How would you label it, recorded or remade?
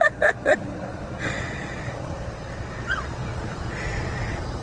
remade